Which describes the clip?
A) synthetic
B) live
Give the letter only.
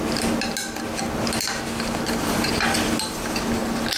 B